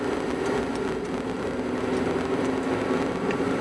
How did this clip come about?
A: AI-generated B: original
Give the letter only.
B